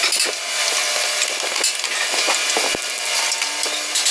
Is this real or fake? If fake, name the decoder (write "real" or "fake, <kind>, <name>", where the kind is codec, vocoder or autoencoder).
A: real